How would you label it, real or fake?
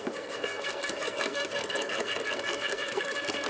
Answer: fake